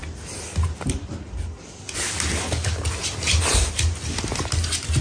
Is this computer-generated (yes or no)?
no